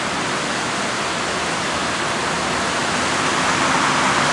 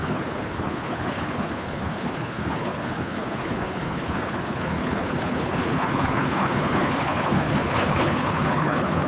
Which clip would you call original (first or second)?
first